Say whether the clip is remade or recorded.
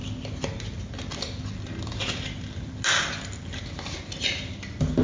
recorded